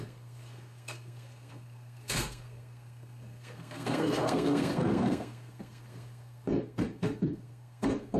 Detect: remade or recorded remade